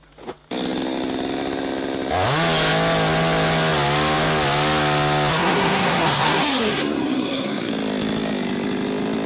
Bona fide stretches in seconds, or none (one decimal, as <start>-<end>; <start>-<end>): 0.0-5.3; 7.7-9.3